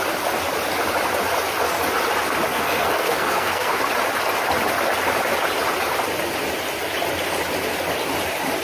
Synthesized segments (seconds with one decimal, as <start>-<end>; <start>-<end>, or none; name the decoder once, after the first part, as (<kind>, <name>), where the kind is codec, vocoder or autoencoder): 2.5-3.8 (codec, SNAC)